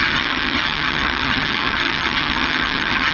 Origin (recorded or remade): remade